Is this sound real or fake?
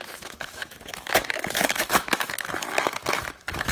fake